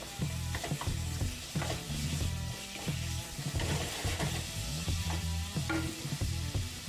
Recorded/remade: recorded